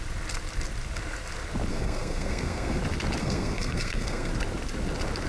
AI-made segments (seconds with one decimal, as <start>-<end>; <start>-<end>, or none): 1.7-2.8; 3.2-4.3